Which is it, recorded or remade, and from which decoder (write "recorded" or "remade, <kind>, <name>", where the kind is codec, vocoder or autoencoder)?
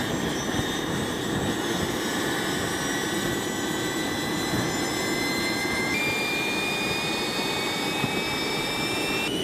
remade, vocoder, BigVGAN v2